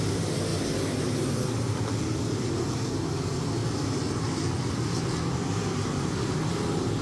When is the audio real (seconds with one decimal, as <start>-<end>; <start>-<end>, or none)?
0.0-7.0